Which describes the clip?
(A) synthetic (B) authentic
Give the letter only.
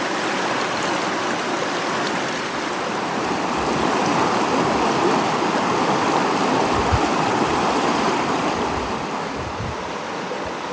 B